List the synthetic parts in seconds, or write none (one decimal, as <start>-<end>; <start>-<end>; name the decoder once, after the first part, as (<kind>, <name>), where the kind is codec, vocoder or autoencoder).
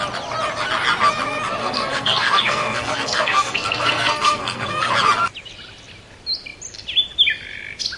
1.6-4.9 (codec, SNAC)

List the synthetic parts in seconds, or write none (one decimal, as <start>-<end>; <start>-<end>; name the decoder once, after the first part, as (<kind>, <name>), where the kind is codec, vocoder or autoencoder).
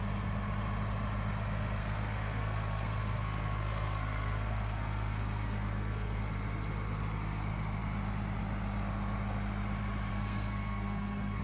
1.8-6.2 (codec, SNAC); 10.1-11.4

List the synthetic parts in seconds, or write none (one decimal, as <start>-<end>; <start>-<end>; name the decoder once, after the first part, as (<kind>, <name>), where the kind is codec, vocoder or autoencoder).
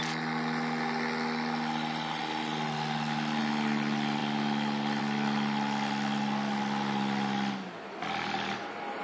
none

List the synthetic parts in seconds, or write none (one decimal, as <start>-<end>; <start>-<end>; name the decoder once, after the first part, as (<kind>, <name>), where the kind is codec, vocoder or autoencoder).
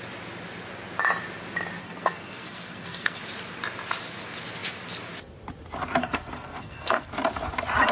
1.8-3.2 (codec, SNAC); 6.0-7.1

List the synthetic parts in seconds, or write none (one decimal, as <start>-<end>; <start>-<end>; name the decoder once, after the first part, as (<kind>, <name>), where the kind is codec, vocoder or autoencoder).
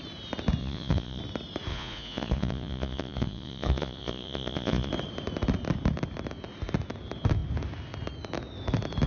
0.6-1.2 (vocoder, Vocos); 1.7-4.9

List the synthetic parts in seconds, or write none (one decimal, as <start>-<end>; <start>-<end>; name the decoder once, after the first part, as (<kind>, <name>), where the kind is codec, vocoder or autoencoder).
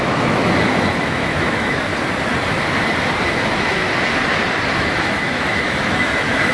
0.0-1.9 (autoencoder, DAC-VAE); 4.9-6.5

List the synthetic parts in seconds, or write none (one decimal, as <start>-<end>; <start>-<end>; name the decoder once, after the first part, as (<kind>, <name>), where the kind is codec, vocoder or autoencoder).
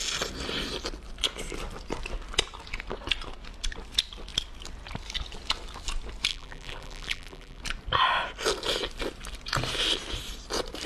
6.3-7.6 (vocoder, BigVGAN v2)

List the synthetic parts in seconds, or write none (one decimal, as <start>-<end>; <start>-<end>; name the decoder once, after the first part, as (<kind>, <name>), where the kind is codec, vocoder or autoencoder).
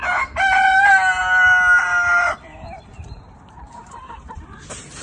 2.2-5.0 (vocoder, BigVGAN v2)